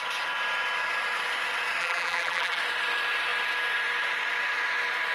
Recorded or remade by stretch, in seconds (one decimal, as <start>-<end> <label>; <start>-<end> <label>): 0.0-1.8 recorded; 1.8-2.6 remade; 2.6-5.1 recorded